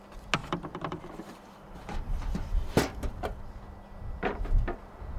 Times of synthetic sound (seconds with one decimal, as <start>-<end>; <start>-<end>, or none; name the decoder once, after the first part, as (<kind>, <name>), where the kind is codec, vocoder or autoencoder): 0.4-3.5 (vocoder, BigVGAN v2)